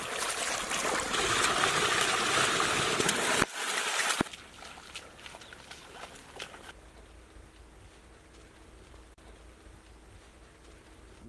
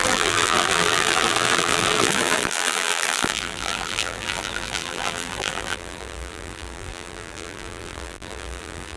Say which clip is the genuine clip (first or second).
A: first